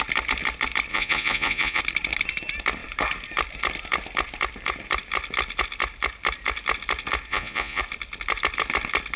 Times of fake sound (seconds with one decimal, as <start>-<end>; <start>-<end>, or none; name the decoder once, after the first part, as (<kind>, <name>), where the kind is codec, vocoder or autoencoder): 0.9-1.8 (vocoder, Vocos); 7.3-7.8

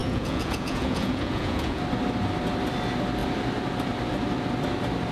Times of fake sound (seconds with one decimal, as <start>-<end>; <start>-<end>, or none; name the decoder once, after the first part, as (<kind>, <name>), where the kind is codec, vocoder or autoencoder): 0.0-1.8 (vocoder, Vocos)